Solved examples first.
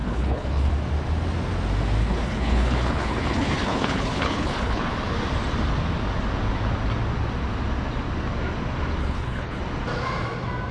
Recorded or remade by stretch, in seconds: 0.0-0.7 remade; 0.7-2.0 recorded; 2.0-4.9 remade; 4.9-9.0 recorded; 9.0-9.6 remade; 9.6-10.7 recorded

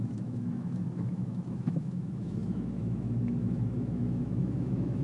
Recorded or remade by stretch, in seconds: 0.0-5.0 remade

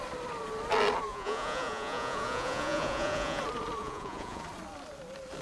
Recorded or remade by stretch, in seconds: 0.0-1.1 recorded; 1.1-3.4 remade; 3.4-3.8 recorded; 3.8-4.4 remade; 4.4-5.4 recorded

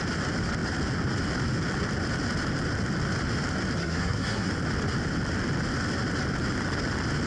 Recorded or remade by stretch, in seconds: 0.0-3.8 recorded; 3.8-4.5 remade; 4.5-7.3 recorded

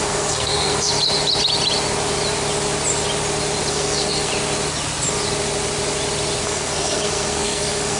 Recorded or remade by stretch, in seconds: 0.0-0.9 remade; 0.9-3.7 recorded; 3.7-4.3 remade; 4.3-6.4 recorded; 6.4-8.0 remade